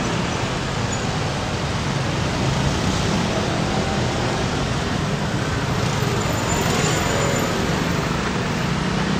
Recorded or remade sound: recorded